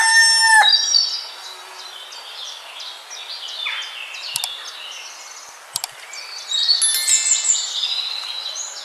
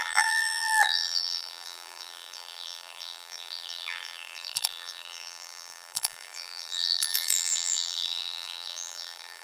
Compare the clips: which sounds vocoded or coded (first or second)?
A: second